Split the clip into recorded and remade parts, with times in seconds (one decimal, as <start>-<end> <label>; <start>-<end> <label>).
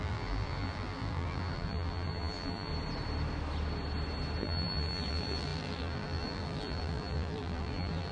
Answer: 0.0-2.7 remade; 2.7-4.4 recorded; 4.4-8.1 remade